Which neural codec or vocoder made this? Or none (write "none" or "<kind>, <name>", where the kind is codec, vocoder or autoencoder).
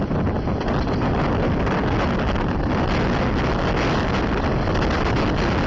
none